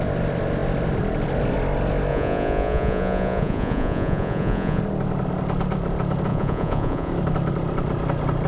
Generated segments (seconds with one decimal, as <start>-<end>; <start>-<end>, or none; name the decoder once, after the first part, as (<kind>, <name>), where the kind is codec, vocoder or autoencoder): 2.1-4.8 (vocoder, Vocos); 6.3-7.1